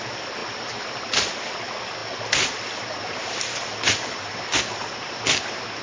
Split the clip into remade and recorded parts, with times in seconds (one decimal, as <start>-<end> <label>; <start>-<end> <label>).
0.0-5.8 recorded